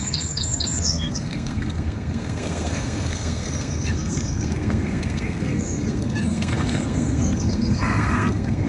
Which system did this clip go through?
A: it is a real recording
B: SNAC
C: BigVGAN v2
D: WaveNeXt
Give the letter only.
B